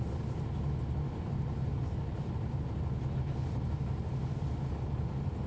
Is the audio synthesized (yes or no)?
no